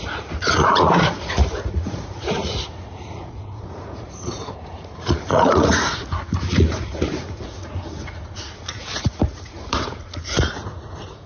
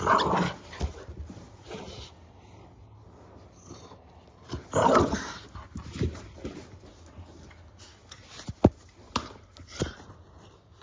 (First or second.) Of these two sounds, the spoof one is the first